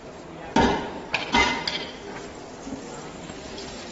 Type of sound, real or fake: real